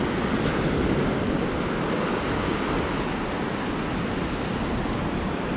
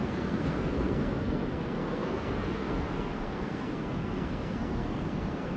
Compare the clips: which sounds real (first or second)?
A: first